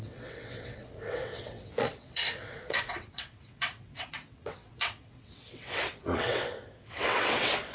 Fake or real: fake